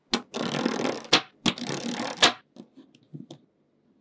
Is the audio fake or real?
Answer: real